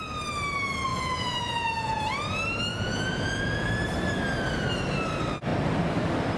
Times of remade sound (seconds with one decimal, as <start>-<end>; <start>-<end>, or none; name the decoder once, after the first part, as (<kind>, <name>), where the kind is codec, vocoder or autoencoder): 0.9-2.0 (vocoder, Vocos); 2.7-3.7